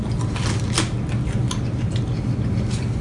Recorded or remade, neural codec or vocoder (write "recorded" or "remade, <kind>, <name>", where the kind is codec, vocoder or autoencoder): recorded